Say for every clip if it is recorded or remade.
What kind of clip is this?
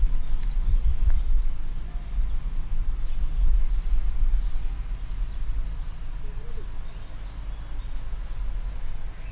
recorded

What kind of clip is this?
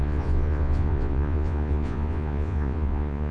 remade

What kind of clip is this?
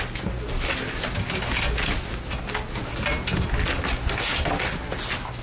recorded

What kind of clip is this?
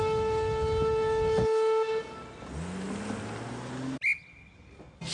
recorded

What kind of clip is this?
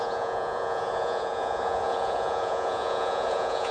remade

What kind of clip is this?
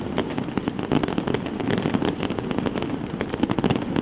recorded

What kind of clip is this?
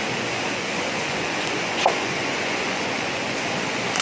remade